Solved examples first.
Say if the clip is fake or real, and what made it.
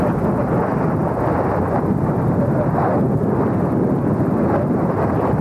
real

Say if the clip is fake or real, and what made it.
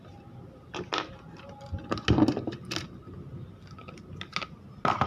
real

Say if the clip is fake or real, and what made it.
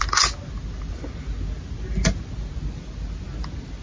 real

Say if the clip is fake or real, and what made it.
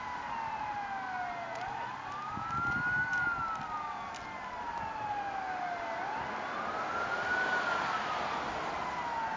real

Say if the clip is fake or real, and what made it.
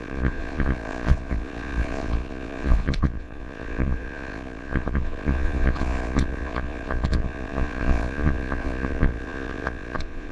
fake, vocoder, Vocos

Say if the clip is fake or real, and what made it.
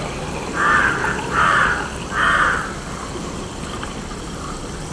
fake, vocoder, BigVGAN v2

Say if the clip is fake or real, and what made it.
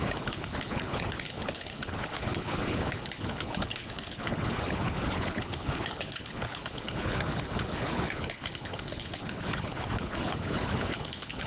fake, codec, HILCodec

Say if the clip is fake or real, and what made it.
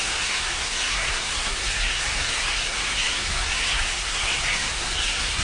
fake, codec, SNAC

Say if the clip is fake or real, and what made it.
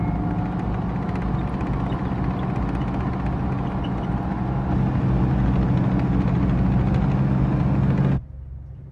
real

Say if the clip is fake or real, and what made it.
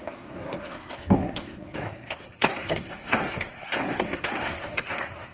fake, codec, SNAC